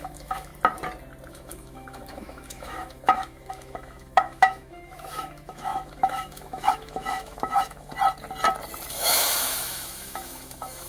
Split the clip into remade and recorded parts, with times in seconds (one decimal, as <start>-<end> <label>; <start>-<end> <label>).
0.0-0.5 remade; 0.5-1.3 recorded; 1.3-7.9 remade; 7.9-8.9 recorded; 8.9-10.9 remade

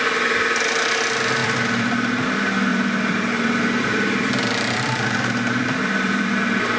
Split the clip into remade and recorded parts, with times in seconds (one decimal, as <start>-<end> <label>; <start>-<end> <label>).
0.0-1.4 recorded; 1.4-1.9 remade; 1.9-2.7 recorded; 2.7-6.3 remade; 6.3-6.8 recorded

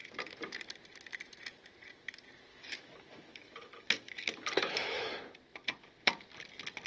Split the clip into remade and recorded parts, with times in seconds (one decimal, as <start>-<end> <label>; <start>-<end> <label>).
0.0-2.5 recorded; 2.5-5.1 remade; 5.1-6.9 recorded

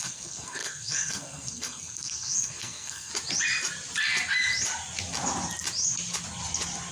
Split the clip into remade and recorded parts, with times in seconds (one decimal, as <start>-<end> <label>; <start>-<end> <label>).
0.0-3.1 remade; 3.1-6.9 recorded